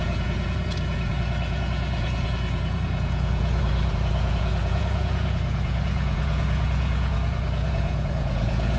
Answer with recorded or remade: remade